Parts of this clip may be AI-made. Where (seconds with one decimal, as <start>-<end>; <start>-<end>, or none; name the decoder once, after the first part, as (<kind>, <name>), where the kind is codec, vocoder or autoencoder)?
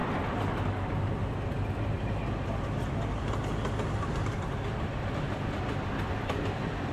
none